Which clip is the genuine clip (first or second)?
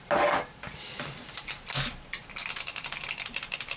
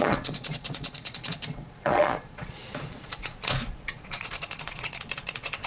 first